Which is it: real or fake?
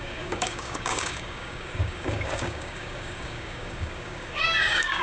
fake